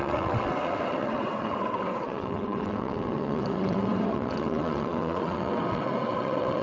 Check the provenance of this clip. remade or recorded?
remade